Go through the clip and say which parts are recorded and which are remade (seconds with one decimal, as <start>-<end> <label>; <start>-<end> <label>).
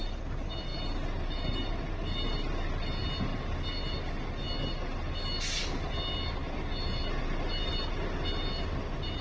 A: 0.0-9.2 recorded